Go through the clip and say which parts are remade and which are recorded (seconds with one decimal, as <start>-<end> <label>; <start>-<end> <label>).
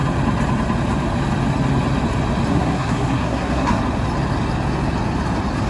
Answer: 0.0-2.5 recorded; 2.5-3.8 remade; 3.8-5.7 recorded